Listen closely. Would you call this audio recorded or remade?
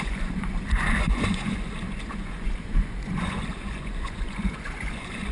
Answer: remade